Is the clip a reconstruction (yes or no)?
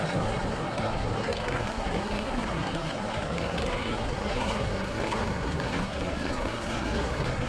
yes